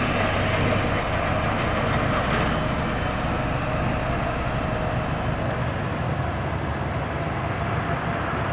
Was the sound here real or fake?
real